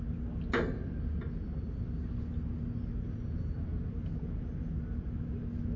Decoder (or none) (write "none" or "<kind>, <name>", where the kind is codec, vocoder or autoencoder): none